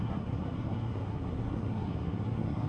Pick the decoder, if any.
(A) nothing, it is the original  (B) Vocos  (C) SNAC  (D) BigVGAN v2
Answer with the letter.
C